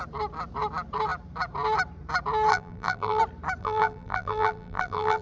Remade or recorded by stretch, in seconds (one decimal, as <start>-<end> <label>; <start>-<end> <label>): 0.0-2.5 recorded; 2.5-3.2 remade; 3.2-3.6 recorded; 3.6-5.2 remade